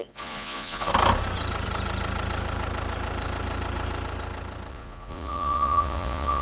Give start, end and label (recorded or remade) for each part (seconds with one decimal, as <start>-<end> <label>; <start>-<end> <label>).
0.0-0.9 remade; 0.9-4.7 recorded; 4.7-6.4 remade